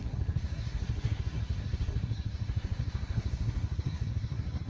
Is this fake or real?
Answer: fake